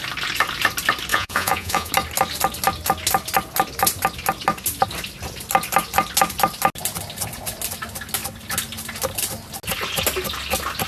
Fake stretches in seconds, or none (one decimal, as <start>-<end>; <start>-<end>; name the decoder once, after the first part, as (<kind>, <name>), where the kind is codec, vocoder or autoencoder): 1.1-1.9 (vocoder, Vocos)